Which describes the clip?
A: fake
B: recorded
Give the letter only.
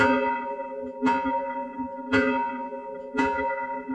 A